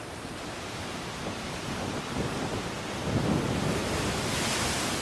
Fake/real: real